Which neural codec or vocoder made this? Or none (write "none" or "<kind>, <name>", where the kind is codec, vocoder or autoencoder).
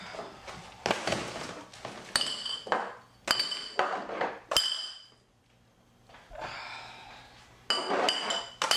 none